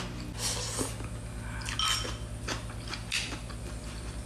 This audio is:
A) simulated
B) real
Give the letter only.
B